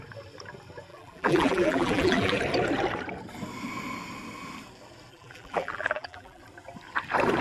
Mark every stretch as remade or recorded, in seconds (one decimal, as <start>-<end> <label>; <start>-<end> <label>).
0.0-0.9 recorded; 0.9-2.4 remade; 2.4-5.1 recorded; 5.1-6.4 remade; 6.4-7.4 recorded